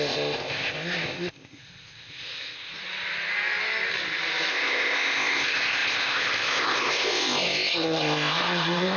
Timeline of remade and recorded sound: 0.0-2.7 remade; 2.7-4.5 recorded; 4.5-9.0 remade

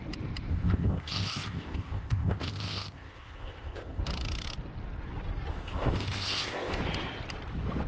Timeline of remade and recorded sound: 0.0-0.5 recorded; 0.5-4.0 remade; 4.0-5.5 recorded; 5.5-6.8 remade; 6.8-7.9 recorded

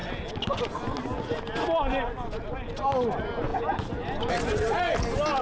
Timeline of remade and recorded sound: 0.0-5.4 recorded

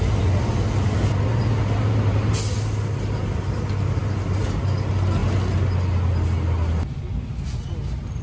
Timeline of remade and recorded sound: 0.0-8.2 recorded

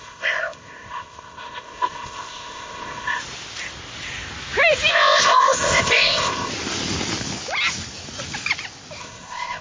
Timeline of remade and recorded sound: 0.0-3.2 remade; 3.2-4.9 recorded; 4.9-6.5 remade; 6.5-9.0 recorded; 9.0-9.6 remade